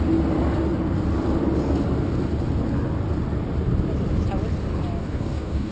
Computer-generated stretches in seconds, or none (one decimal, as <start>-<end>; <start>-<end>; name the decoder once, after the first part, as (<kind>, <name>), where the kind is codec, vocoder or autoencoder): 5.0-5.7 (codec, DAC)